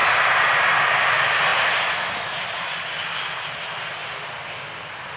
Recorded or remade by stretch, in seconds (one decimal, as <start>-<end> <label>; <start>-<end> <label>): 0.0-5.2 recorded